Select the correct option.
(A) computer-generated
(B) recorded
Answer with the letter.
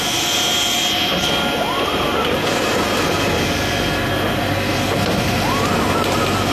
B